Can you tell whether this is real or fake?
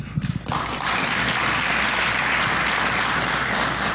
real